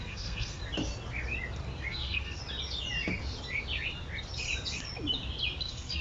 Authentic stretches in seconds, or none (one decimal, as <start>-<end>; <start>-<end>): 0.6-1.9; 2.4-5.6